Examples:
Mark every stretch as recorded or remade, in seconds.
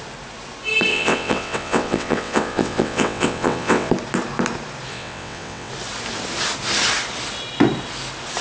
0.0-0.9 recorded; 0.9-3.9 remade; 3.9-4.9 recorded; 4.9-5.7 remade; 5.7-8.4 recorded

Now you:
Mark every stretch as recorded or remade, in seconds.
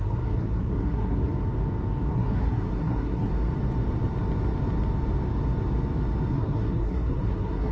0.0-1.3 remade; 1.3-2.1 recorded; 2.1-3.3 remade; 3.3-6.3 recorded; 6.3-7.7 remade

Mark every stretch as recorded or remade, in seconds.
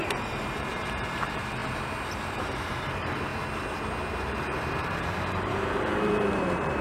0.0-1.6 remade; 1.6-2.1 recorded; 2.1-3.3 remade; 3.3-4.1 recorded; 4.1-6.8 remade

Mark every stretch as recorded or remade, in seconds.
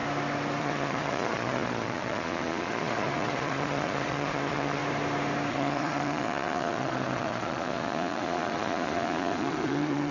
0.0-0.6 recorded; 0.6-4.8 remade; 4.8-5.5 recorded; 5.5-10.1 remade